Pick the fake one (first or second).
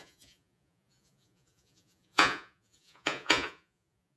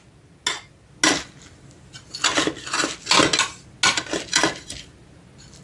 first